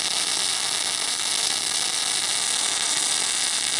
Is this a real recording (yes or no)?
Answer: yes